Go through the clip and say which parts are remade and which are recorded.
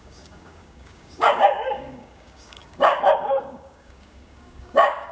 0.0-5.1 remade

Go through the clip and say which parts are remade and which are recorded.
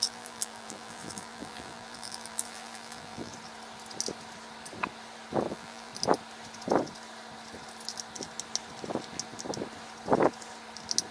0.0-3.3 remade; 3.3-5.5 recorded; 5.5-5.9 remade; 5.9-11.1 recorded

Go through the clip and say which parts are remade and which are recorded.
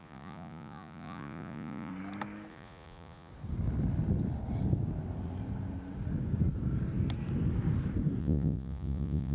0.0-1.9 remade; 1.9-2.5 recorded; 2.5-3.3 remade; 3.3-8.2 recorded; 8.2-9.3 remade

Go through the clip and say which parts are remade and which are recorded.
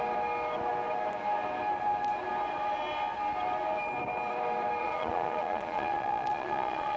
0.0-4.8 recorded; 4.8-7.0 remade